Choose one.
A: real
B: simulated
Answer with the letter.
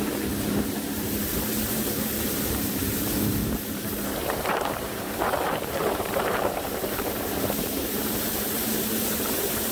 B